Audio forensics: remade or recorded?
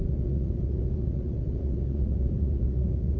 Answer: remade